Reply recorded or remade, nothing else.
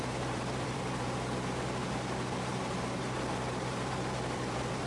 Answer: remade